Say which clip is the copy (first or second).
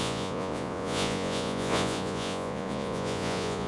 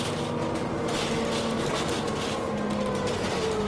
first